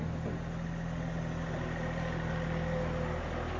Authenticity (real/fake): real